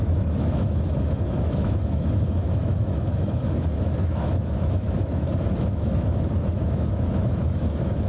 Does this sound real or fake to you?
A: fake